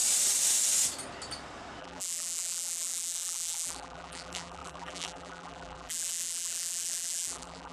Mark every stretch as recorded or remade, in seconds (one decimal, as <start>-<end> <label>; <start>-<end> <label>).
0.0-1.8 recorded; 1.8-7.7 remade

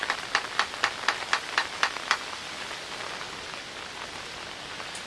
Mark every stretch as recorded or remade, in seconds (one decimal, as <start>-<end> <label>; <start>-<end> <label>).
0.0-5.1 recorded

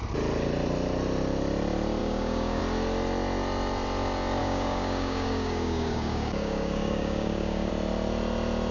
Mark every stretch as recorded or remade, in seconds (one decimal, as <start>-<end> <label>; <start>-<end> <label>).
0.0-2.0 recorded; 2.0-2.6 remade; 2.6-4.4 recorded; 4.4-7.7 remade; 7.7-8.7 recorded

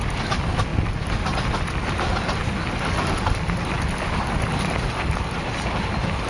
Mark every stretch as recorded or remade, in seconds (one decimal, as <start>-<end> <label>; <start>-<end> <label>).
0.0-6.3 recorded

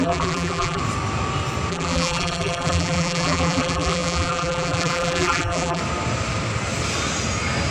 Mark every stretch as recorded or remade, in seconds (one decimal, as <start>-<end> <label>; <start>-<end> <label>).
0.0-0.8 remade; 0.8-1.7 recorded; 1.7-5.8 remade; 5.8-7.7 recorded

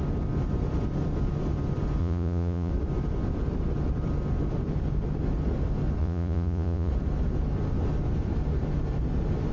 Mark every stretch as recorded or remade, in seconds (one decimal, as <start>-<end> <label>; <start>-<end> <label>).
0.0-2.0 recorded; 2.0-2.7 remade; 2.7-6.0 recorded; 6.0-6.9 remade; 6.9-9.5 recorded

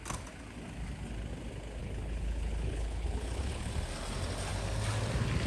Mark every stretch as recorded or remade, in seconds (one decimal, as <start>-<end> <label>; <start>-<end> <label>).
0.0-1.8 recorded; 1.8-3.7 remade; 3.7-5.5 recorded

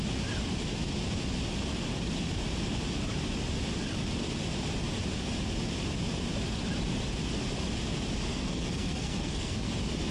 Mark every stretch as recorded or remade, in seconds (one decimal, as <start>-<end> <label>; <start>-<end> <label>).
0.0-8.3 recorded; 8.3-9.7 remade; 9.7-10.1 recorded